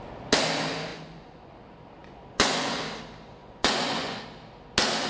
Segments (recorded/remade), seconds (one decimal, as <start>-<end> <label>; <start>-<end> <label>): 0.0-0.9 recorded; 0.9-1.5 remade; 1.5-2.0 recorded; 2.0-2.8 remade; 2.8-3.4 recorded; 3.4-4.2 remade; 4.2-5.1 recorded